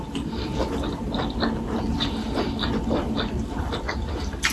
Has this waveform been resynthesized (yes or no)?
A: no